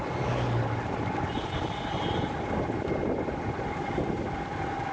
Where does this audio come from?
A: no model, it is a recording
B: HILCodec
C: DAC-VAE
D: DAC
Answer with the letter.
A